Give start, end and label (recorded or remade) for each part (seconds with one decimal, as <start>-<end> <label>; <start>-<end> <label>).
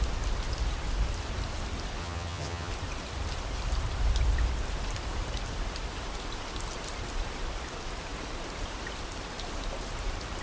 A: 0.0-2.0 recorded; 2.0-2.7 remade; 2.7-10.4 recorded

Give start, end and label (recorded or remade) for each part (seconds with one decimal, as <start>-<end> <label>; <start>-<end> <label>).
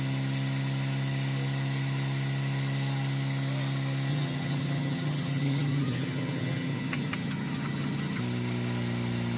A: 0.0-4.1 recorded; 4.1-8.2 remade; 8.2-9.4 recorded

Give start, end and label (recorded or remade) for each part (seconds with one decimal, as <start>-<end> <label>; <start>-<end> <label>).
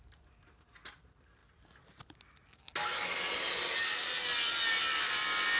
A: 0.0-5.6 recorded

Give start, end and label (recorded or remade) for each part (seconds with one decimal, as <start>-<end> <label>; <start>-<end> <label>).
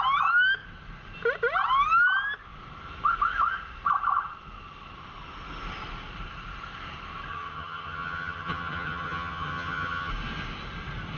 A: 0.0-7.3 recorded; 7.3-10.1 remade; 10.1-11.2 recorded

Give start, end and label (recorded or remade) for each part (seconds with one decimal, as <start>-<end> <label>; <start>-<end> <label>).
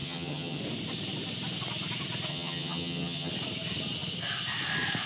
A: 0.0-0.6 remade; 0.6-2.3 recorded; 2.3-3.3 remade; 3.3-5.1 recorded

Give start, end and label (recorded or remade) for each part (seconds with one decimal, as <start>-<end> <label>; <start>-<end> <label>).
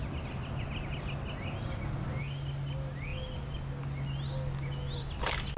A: 0.0-5.6 recorded